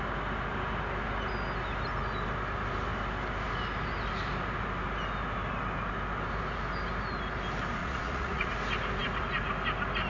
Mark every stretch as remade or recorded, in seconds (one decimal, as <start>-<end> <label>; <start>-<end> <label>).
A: 0.0-7.8 recorded; 7.8-8.5 remade; 8.5-10.1 recorded